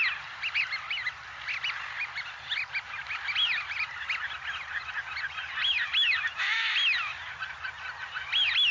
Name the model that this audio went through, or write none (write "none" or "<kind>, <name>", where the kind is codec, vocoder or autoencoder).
none